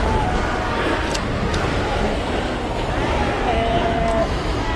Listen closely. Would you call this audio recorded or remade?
recorded